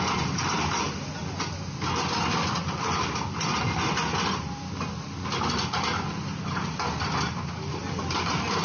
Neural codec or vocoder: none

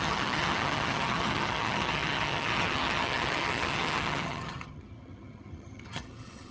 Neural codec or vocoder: vocoder, HiFi-GAN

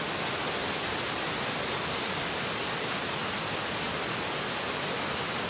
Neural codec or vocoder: none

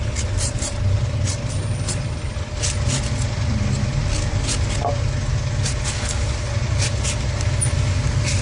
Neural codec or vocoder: none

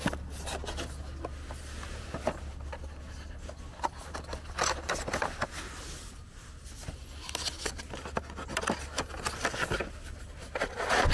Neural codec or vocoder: none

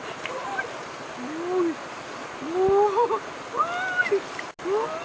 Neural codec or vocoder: none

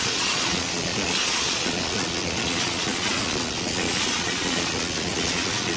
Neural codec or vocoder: vocoder, Vocos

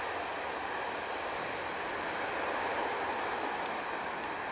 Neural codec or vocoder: none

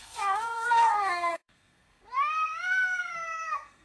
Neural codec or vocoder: codec, SNAC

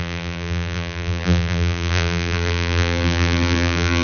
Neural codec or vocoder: vocoder, BigVGAN v2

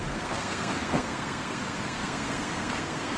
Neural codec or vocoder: codec, SNAC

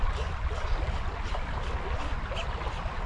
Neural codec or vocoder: none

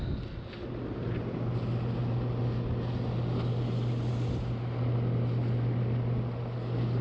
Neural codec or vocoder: none